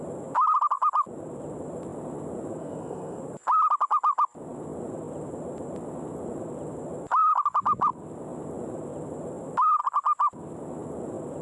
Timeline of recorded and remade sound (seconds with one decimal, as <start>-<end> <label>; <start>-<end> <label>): 0.0-2.6 recorded; 2.6-3.2 remade; 3.2-11.4 recorded